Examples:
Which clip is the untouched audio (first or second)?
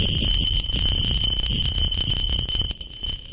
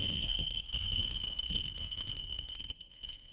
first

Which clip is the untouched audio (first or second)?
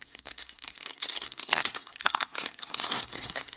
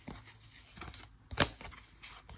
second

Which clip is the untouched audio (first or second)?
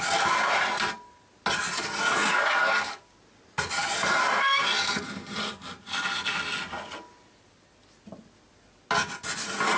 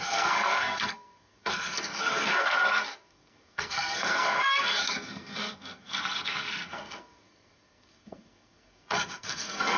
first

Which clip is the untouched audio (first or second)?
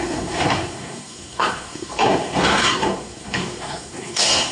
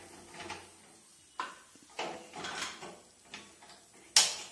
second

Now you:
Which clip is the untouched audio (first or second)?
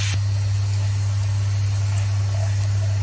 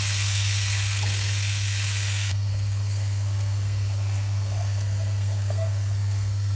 first